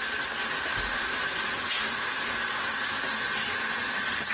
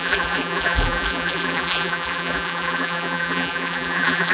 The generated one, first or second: second